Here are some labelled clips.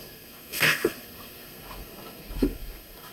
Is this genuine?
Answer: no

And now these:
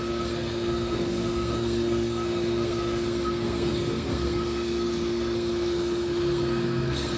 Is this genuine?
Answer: no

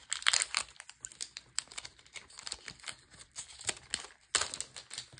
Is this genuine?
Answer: yes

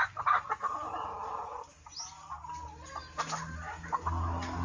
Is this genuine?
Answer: yes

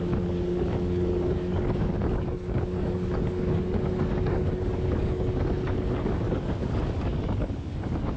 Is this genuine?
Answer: no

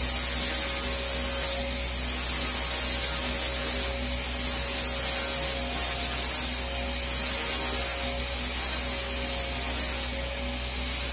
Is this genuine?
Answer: yes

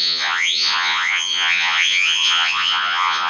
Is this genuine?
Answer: no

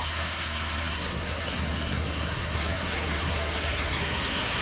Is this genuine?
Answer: no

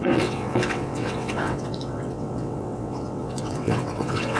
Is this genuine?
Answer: no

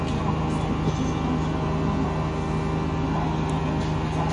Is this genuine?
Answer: yes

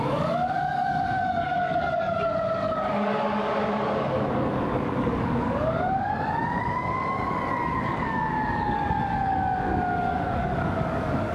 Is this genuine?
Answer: no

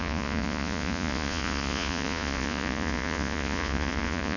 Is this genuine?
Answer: no